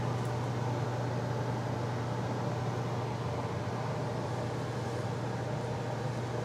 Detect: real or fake real